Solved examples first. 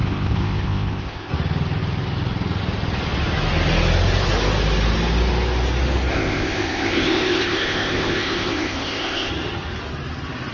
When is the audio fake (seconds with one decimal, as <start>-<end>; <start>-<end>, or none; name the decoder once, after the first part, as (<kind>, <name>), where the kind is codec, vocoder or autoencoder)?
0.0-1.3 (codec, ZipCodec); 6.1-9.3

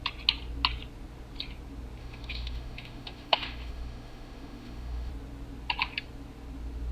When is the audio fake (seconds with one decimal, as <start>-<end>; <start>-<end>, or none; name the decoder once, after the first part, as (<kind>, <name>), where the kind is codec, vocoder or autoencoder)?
2.0-5.1 (autoencoder, DAC-VAE)

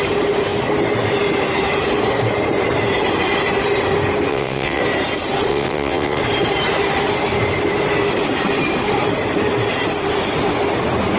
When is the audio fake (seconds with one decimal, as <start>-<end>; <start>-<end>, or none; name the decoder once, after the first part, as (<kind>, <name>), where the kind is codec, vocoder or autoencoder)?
4.3-4.8 (vocoder, WaveNeXt); 5.5-6.2

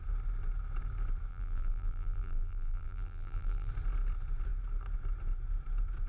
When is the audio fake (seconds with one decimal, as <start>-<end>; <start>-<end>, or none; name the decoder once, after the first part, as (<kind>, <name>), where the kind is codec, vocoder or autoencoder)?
1.3-3.7 (vocoder, BigVGAN v2)

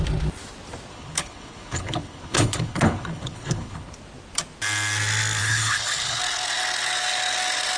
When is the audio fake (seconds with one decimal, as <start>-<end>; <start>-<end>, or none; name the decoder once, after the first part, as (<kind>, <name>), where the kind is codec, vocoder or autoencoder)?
0.9-3.9 (codec, HILCodec); 5.4-6.2

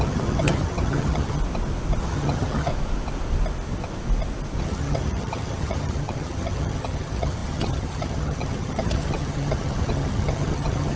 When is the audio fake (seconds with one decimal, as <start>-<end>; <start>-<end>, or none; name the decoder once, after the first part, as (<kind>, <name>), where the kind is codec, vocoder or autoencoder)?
0.0-1.4 (vocoder, HiFi-GAN); 2.0-2.7; 4.6-11.0

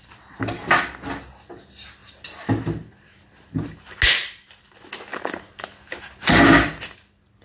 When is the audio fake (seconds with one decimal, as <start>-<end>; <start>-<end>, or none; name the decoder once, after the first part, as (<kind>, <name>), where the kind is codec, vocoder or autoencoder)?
none